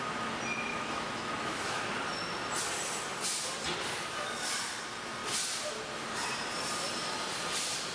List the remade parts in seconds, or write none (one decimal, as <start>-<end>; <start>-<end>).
0.7-1.8